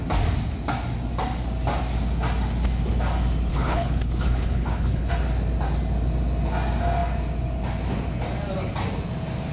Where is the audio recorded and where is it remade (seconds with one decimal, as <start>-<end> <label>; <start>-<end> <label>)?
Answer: 0.0-3.5 recorded; 3.5-5.1 remade; 5.1-9.5 recorded

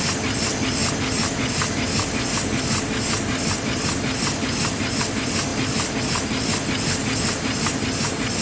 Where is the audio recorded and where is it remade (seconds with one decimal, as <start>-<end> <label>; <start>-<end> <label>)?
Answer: 0.0-8.4 recorded

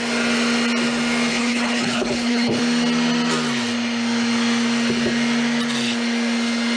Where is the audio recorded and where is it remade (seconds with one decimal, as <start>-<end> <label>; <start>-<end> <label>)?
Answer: 0.0-1.3 recorded; 1.3-2.6 remade; 2.6-6.8 recorded

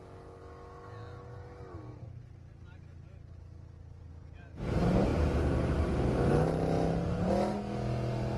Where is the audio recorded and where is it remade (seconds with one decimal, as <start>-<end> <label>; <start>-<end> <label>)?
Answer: 0.0-8.4 recorded